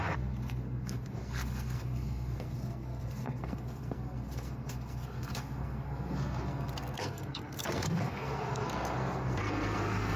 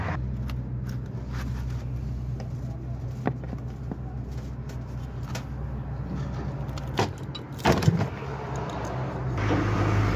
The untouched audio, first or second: second